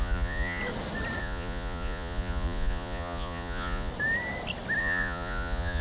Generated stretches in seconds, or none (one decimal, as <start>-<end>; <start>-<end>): 0.0-0.6; 1.2-3.9; 4.8-5.8